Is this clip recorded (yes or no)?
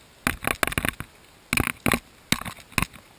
yes